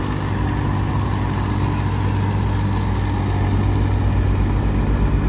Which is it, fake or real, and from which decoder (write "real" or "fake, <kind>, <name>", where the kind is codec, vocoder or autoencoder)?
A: real